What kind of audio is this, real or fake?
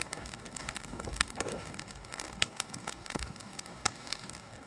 fake